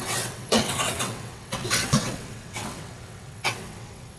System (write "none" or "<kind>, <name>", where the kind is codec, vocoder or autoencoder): vocoder, WaveNeXt